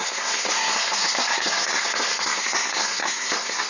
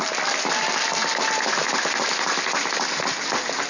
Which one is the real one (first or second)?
second